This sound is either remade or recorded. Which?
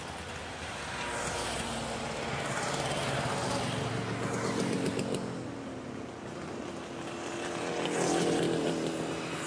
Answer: recorded